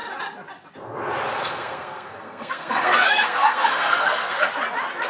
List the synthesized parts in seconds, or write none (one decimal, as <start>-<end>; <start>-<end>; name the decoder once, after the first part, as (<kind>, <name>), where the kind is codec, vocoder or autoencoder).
1.4-4.5 (codec, SNAC)